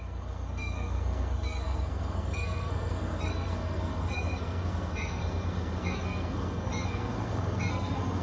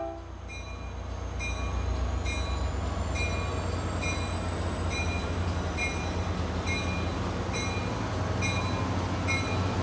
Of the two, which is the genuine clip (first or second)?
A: second